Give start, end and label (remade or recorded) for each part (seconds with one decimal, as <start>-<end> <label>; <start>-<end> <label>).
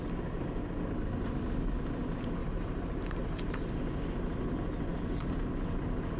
0.0-2.4 recorded; 2.4-3.7 remade; 3.7-6.2 recorded